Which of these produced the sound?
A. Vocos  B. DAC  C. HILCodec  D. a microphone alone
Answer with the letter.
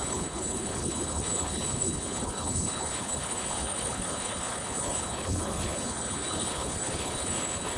C